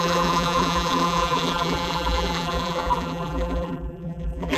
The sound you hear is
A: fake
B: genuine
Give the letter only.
A